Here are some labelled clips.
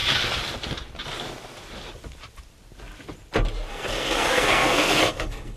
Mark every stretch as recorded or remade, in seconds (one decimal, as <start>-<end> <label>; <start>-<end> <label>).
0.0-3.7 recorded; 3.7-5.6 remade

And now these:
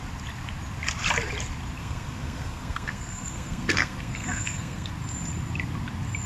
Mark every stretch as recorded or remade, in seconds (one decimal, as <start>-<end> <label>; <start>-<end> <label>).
0.0-1.8 recorded; 1.8-4.9 remade; 4.9-6.3 recorded

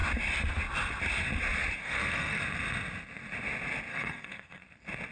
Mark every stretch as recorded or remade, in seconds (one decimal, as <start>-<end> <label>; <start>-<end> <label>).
0.0-1.8 recorded; 1.8-2.4 remade; 2.4-3.9 recorded; 3.9-4.6 remade; 4.6-5.1 recorded

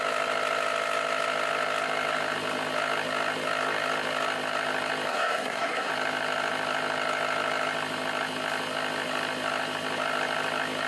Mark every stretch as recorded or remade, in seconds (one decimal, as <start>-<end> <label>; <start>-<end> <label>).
0.0-5.1 recorded; 5.1-5.9 remade; 5.9-10.9 recorded

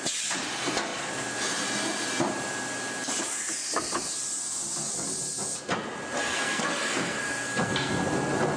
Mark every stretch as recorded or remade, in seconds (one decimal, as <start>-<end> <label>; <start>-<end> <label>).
0.0-6.2 recorded; 6.2-7.9 remade; 7.9-8.6 recorded

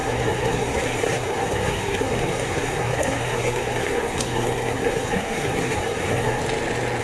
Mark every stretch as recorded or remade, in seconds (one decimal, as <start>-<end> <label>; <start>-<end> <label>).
0.0-6.4 remade; 6.4-7.0 recorded

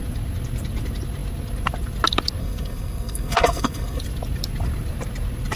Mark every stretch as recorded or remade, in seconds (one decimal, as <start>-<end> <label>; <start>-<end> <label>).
0.0-2.4 recorded; 2.4-4.0 remade; 4.0-5.6 recorded

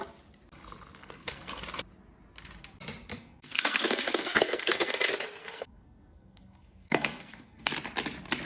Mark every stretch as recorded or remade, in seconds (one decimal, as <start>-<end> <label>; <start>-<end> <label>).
0.0-1.0 recorded; 1.0-1.6 remade; 1.6-3.1 recorded; 3.1-4.9 remade; 4.9-5.4 recorded; 5.4-7.7 remade; 7.7-8.5 recorded